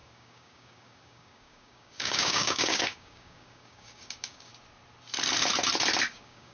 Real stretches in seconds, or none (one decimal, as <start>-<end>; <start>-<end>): 4.5-6.1